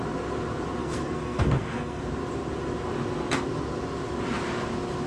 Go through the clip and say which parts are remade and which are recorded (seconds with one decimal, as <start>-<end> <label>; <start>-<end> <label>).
0.0-0.8 recorded; 0.8-2.0 remade; 2.0-5.1 recorded